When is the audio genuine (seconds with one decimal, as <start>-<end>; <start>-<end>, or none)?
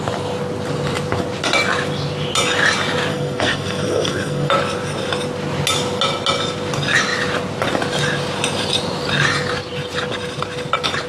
0.0-3.1; 4.5-11.1